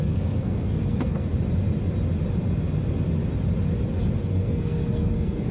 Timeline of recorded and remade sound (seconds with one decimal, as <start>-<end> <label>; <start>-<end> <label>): 0.0-1.3 remade; 1.3-4.2 recorded; 4.2-5.5 remade